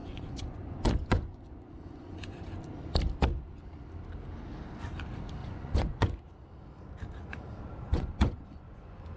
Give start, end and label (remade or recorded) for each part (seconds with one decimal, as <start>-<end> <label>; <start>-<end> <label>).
0.0-2.6 remade; 2.6-5.4 recorded; 5.4-6.2 remade; 6.2-7.9 recorded; 7.9-9.2 remade